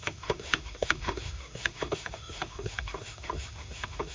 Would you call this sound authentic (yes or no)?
no